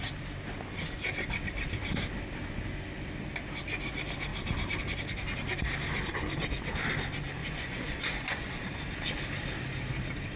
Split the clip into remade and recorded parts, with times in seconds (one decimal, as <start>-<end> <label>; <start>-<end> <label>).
0.0-7.4 recorded; 7.4-8.5 remade; 8.5-10.4 recorded